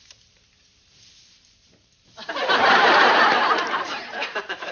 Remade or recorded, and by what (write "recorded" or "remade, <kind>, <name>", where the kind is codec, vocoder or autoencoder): remade, vocoder, BigVGAN v2